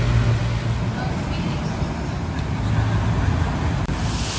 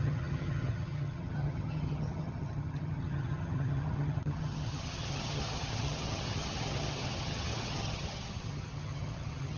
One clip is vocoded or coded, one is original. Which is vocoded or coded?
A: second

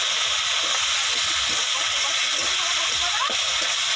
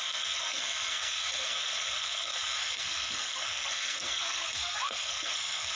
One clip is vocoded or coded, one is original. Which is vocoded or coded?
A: second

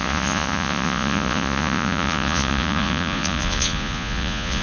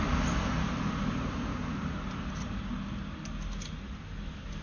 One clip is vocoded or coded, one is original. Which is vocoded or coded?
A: first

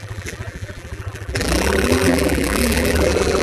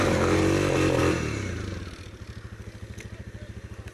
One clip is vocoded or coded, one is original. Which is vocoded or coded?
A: first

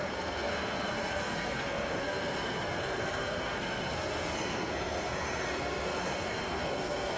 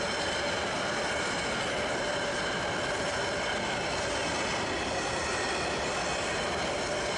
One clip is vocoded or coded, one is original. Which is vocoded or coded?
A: first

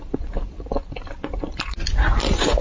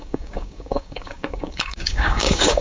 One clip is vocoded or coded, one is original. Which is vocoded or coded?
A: second